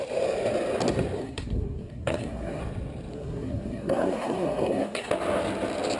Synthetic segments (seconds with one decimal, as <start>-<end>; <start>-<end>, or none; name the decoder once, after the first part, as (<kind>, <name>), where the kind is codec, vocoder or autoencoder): 1.2-2.6 (codec, SNAC); 3.1-5.1